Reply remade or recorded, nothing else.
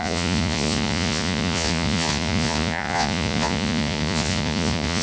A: remade